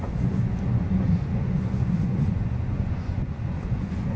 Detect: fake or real fake